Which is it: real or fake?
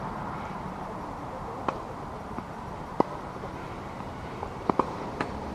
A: fake